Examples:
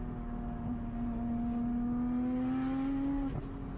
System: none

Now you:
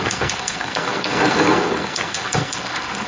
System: codec, SNAC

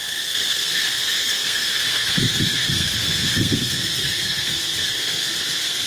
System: codec, SNAC